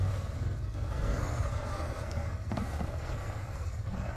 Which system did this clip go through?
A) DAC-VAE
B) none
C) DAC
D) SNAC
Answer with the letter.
D